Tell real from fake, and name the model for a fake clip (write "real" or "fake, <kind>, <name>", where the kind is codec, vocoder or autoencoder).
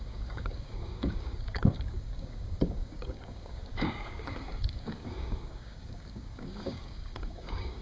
fake, codec, DAC